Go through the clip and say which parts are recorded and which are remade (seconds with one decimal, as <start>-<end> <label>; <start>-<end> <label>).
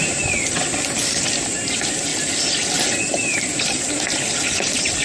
0.0-5.0 recorded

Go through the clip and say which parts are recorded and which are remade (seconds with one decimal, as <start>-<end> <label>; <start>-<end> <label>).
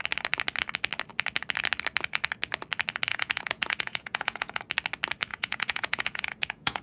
0.0-3.1 recorded; 3.1-4.6 remade; 4.6-5.3 recorded; 5.3-6.8 remade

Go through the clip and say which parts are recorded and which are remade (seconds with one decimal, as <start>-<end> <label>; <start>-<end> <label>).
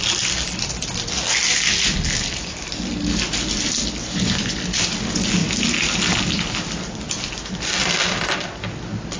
0.0-4.0 recorded; 4.0-4.6 remade; 4.6-9.2 recorded